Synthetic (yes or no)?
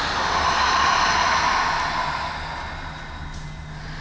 no